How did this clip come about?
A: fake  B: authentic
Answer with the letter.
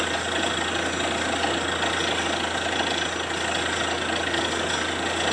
B